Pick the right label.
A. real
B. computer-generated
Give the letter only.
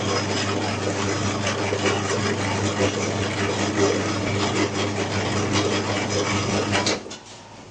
A